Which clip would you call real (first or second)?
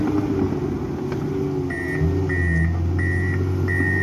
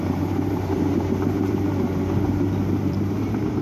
first